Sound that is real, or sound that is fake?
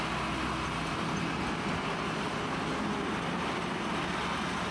real